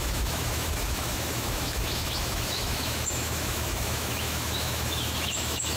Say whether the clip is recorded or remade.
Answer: remade